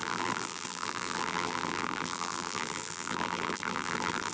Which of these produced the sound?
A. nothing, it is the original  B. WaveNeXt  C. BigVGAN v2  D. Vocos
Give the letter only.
C